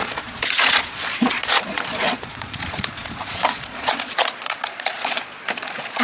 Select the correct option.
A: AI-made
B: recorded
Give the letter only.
A